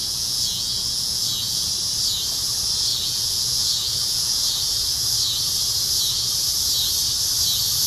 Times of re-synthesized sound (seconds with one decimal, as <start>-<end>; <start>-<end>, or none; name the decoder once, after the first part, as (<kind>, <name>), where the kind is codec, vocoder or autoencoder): 0.0-1.7 (vocoder, Vocos); 2.9-4.6